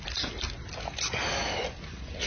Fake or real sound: real